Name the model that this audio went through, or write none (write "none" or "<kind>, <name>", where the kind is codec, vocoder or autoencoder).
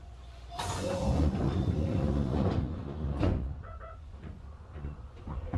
vocoder, Vocos